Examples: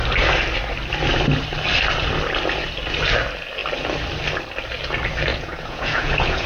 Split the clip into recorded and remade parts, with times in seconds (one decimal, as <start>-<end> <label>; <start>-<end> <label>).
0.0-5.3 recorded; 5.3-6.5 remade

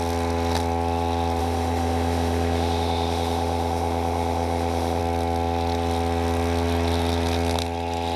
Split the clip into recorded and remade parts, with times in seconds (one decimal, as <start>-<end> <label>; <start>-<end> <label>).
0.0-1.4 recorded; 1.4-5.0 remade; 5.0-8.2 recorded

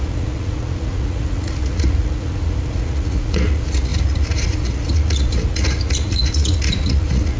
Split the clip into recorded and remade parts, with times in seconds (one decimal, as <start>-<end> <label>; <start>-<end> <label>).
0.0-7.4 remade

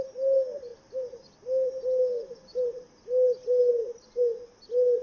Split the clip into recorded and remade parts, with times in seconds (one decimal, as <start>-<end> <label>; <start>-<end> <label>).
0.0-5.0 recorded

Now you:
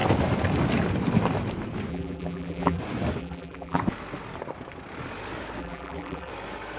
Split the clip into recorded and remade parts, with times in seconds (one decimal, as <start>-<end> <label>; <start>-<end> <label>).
0.0-1.9 recorded; 1.9-2.8 remade; 2.8-3.2 recorded; 3.2-3.8 remade; 3.8-5.6 recorded; 5.6-6.3 remade; 6.3-6.8 recorded